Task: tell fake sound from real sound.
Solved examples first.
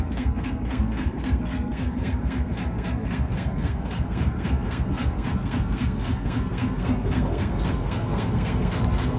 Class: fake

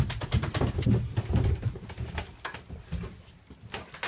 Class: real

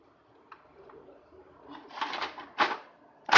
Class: real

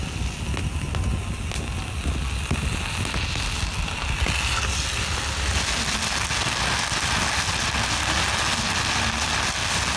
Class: real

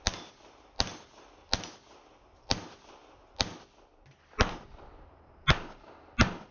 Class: real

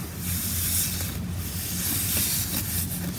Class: real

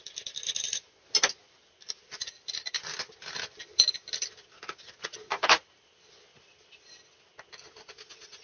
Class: real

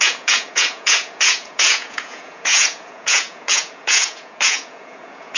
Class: fake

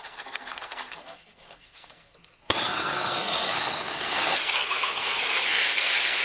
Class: fake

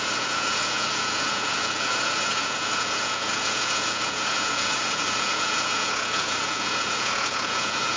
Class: fake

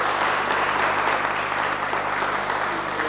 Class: real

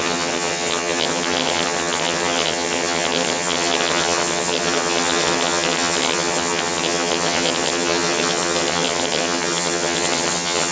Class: fake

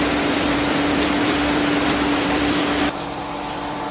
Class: fake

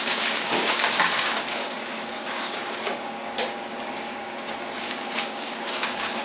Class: fake